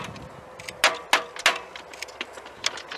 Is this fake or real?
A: real